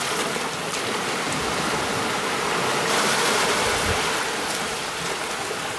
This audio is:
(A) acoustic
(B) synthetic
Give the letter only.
A